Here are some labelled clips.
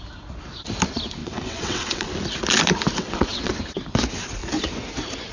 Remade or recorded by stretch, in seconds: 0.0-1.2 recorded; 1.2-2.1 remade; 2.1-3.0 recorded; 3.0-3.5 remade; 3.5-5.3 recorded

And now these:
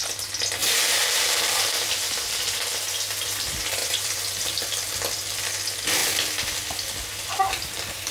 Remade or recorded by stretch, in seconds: 0.0-0.6 recorded; 0.6-2.7 remade; 2.7-3.8 recorded; 3.8-4.8 remade; 4.8-8.1 recorded